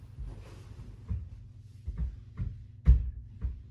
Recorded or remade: recorded